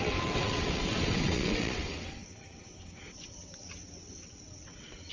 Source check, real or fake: fake